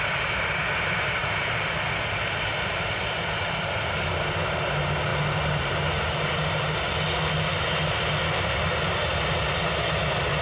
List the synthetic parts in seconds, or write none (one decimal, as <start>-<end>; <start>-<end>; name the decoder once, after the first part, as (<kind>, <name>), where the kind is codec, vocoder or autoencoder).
5.1-5.7 (vocoder, BigVGAN v2)